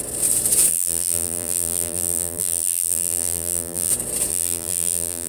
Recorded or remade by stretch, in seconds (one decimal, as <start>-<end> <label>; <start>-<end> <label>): 0.0-0.7 recorded; 0.7-3.9 remade; 3.9-4.3 recorded; 4.3-5.3 remade

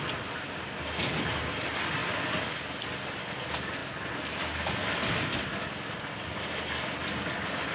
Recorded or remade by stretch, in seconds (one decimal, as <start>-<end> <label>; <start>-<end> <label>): 0.0-7.7 recorded

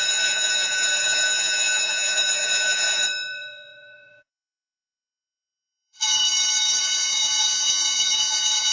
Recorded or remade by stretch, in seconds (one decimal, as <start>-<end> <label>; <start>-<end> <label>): 0.0-6.2 remade; 6.2-6.8 recorded; 6.8-8.7 remade